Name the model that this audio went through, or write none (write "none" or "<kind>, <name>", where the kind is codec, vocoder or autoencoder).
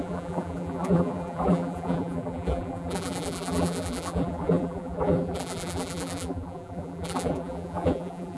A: vocoder, BigVGAN v2